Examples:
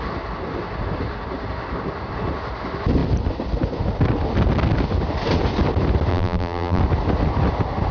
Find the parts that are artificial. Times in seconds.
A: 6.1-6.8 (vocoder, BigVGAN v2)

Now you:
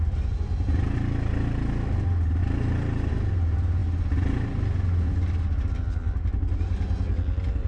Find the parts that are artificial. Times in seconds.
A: none